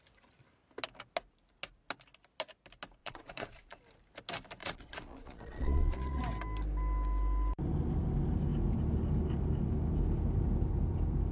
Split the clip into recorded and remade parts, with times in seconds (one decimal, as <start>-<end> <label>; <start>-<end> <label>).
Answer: 0.0-3.0 recorded; 3.0-3.8 remade; 3.8-4.6 recorded; 4.6-6.2 remade; 6.2-11.3 recorded